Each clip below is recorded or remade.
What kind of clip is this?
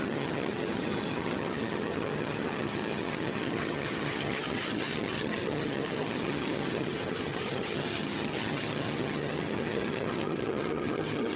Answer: remade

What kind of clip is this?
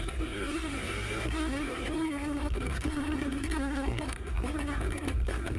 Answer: remade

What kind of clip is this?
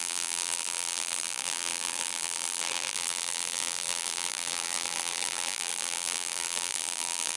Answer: remade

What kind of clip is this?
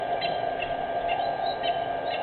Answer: recorded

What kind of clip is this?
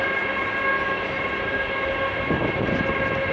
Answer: recorded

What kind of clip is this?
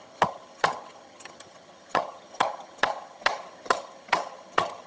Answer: remade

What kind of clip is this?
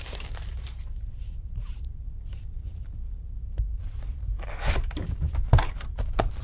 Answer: remade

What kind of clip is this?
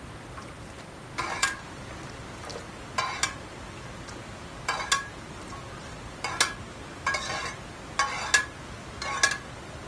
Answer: recorded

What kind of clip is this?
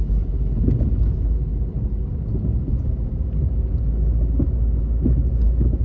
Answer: recorded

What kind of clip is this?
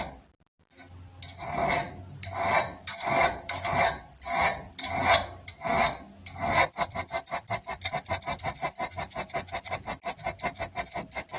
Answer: recorded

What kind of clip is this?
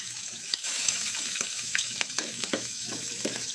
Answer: remade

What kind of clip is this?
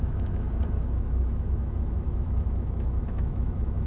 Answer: remade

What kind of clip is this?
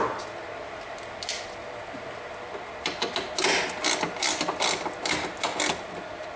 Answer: recorded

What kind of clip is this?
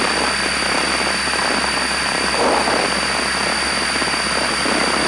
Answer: recorded